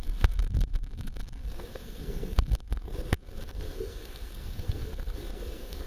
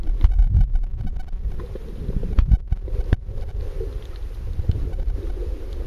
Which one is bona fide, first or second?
second